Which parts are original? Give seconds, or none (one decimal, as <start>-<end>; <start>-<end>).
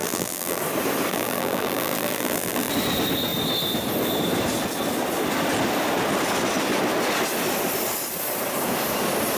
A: 0.6-1.1; 2.7-9.4